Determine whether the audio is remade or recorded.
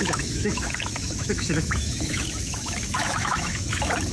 remade